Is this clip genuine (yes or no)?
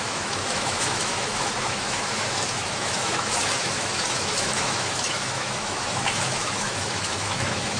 no